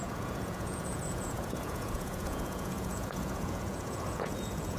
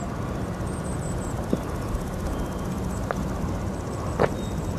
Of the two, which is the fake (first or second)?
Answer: first